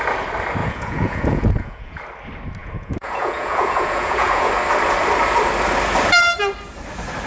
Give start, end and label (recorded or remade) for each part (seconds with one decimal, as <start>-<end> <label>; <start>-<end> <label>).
0.0-0.6 recorded; 0.6-2.0 remade; 2.0-2.6 recorded; 2.6-4.5 remade; 4.5-7.3 recorded